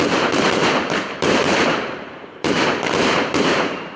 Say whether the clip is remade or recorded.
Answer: remade